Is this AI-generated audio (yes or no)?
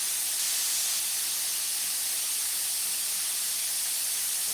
no